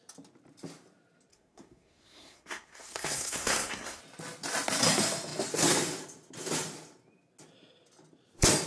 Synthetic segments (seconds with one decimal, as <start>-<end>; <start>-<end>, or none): 1.3-4.0